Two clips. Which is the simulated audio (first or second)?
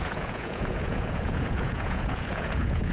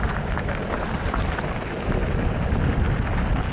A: first